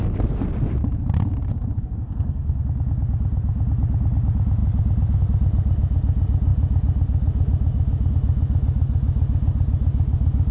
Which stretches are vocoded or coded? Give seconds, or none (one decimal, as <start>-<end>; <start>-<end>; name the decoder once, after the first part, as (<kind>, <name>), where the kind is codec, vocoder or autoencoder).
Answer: 1.5-2.6 (codec, SNAC)